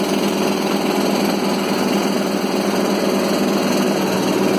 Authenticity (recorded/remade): recorded